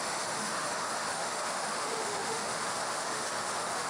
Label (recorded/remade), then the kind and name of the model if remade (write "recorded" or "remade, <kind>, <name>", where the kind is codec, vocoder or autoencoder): remade, autoencoder, DAC-VAE